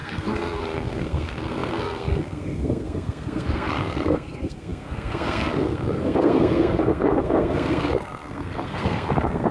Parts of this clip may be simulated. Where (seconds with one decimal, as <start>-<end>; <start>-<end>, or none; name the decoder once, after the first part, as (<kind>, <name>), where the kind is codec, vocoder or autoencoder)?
0.0-9.5 (codec, SNAC)